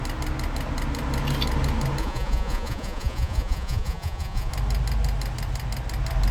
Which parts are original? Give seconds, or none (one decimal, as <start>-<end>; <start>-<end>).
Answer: 0.0-2.0; 4.5-6.3